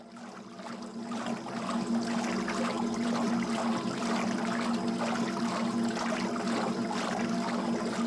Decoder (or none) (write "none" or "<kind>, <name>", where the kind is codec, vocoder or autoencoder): none